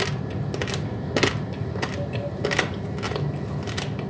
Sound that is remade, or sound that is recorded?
recorded